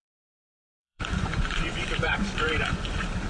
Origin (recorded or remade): remade